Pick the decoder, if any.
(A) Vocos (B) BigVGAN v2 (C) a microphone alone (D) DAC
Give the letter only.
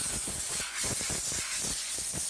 A